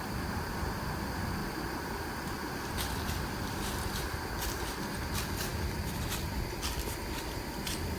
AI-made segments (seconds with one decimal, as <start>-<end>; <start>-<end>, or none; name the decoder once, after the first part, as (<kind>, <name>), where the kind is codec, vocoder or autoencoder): 0.0-5.5 (vocoder, BigVGAN v2); 7.5-8.0